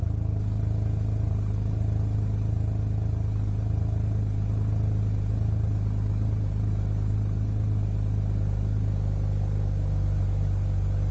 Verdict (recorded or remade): recorded